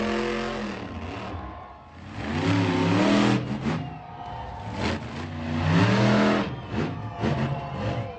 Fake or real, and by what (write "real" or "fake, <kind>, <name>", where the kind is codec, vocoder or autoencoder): real